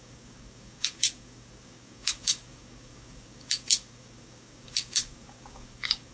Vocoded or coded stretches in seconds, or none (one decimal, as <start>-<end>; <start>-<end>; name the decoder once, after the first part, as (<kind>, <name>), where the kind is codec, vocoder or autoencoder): 0.0-6.1 (codec, DAC)